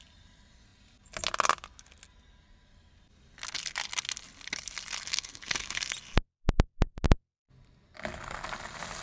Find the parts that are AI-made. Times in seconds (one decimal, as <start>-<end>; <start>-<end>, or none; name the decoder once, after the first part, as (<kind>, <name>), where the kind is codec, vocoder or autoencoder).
5.1-5.8 (codec, SNAC)